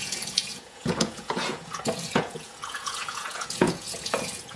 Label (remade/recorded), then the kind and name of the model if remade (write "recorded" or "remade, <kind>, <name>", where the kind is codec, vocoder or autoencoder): remade, vocoder, Vocos